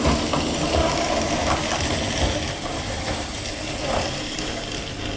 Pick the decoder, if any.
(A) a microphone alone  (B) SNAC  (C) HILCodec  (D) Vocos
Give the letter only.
A